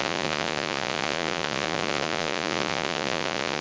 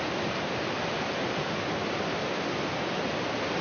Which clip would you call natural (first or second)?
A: second